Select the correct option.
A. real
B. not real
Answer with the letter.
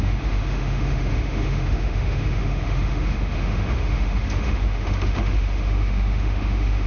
B